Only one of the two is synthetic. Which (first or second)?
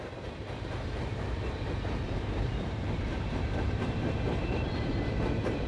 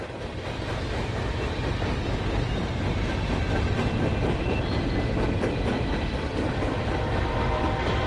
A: first